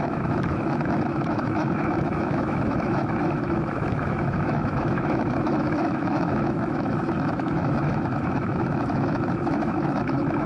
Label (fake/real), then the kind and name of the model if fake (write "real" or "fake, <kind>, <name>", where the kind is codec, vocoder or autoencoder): fake, autoencoder, DAC-VAE